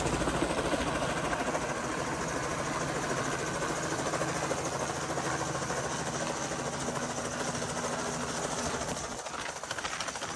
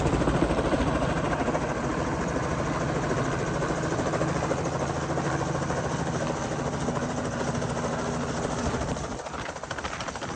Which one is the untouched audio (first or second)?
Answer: first